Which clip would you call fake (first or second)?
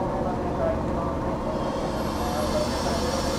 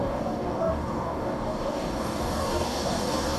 second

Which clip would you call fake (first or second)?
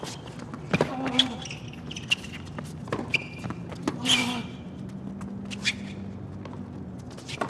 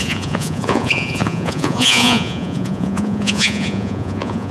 second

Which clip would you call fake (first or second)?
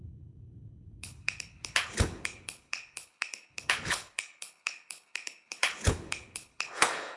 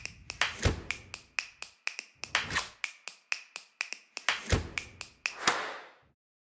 first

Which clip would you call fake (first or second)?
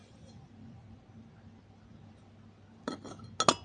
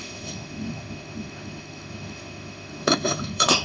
second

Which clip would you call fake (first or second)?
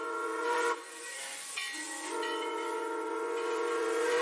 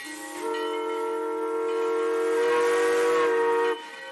first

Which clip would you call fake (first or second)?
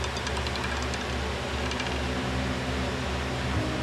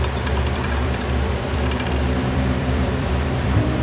second